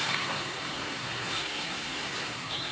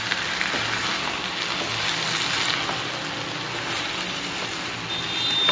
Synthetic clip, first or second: first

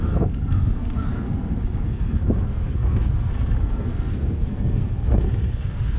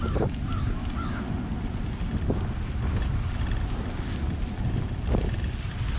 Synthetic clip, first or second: first